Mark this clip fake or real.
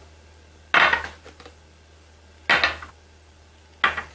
real